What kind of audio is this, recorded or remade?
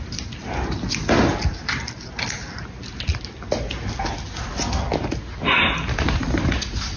recorded